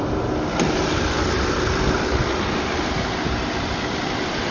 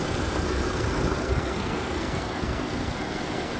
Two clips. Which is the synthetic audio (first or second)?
second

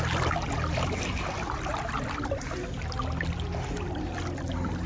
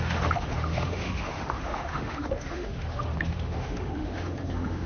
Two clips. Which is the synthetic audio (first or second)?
second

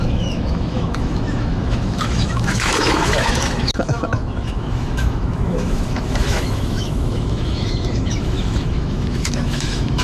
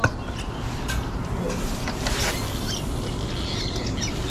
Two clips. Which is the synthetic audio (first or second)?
first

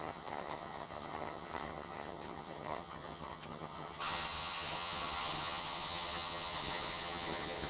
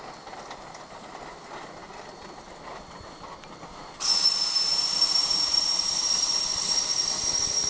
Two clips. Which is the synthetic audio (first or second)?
first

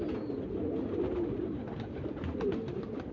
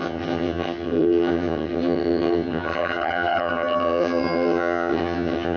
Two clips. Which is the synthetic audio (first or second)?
second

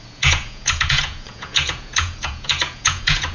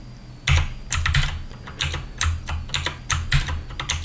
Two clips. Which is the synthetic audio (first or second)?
first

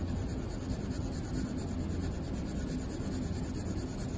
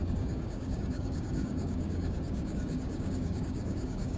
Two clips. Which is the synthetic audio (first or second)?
second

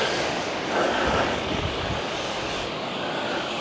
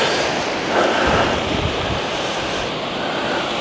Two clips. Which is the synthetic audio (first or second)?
first